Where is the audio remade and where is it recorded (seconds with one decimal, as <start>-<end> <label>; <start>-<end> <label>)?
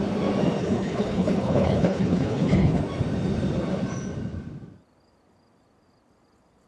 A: 0.0-0.6 recorded; 0.6-2.8 remade; 2.8-6.7 recorded